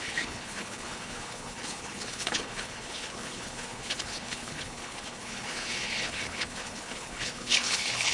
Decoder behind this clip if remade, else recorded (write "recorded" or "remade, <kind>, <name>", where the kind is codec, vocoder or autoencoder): remade, codec, HILCodec